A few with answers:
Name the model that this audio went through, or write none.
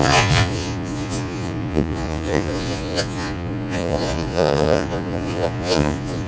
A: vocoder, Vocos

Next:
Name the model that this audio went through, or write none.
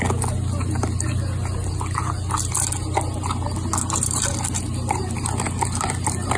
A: none